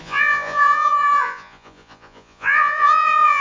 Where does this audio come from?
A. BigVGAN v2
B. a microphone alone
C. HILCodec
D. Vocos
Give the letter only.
D